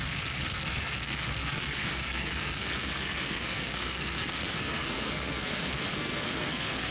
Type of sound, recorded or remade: remade